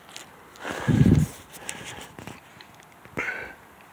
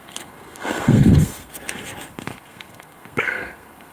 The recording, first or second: first